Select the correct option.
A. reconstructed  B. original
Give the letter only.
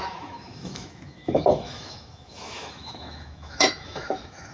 A